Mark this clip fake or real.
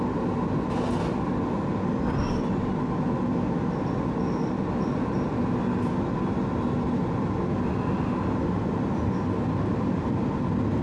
real